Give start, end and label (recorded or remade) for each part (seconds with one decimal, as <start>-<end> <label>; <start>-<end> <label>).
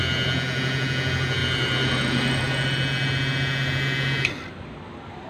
0.0-5.3 recorded